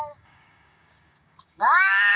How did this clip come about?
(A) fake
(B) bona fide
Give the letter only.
A